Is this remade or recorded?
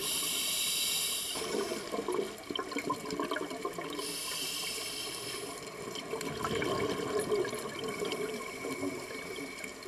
remade